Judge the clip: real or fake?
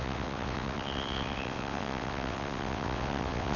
fake